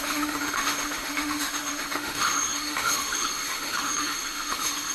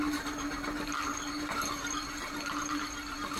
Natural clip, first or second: second